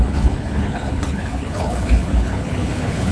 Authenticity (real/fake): fake